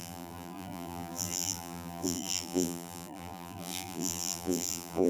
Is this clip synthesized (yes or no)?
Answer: yes